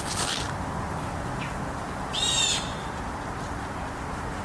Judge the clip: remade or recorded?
recorded